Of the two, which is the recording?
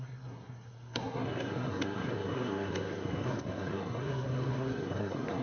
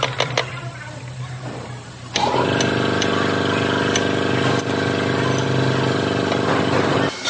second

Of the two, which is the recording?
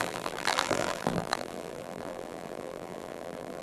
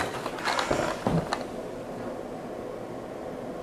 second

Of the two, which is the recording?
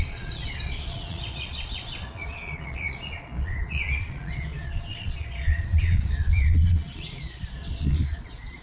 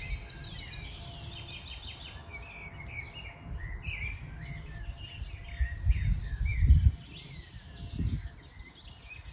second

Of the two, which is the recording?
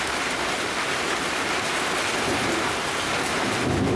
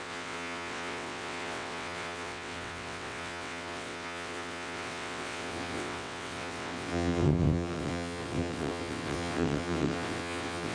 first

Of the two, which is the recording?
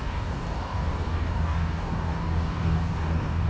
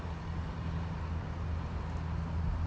second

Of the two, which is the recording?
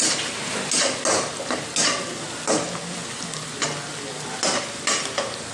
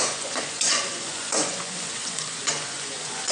first